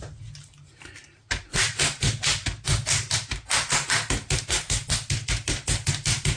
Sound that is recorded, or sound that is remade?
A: recorded